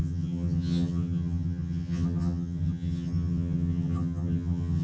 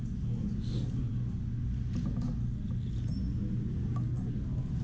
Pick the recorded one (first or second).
second